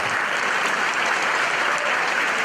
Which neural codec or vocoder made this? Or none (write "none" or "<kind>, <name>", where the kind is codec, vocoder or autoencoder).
none